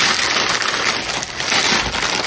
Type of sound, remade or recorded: recorded